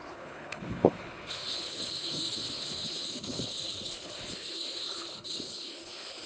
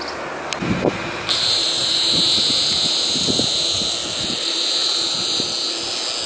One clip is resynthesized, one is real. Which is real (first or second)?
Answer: second